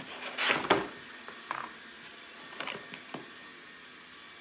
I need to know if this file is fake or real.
real